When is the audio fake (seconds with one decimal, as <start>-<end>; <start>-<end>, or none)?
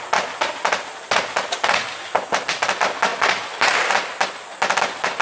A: none